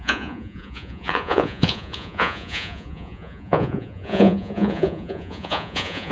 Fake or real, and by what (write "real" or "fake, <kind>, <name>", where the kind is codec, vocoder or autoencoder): fake, vocoder, Vocos